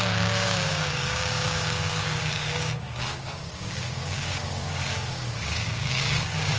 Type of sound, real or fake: fake